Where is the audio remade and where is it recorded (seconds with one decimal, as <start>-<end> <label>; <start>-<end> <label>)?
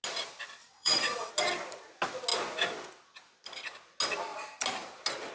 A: 0.0-0.6 recorded; 0.6-1.3 remade; 1.3-5.3 recorded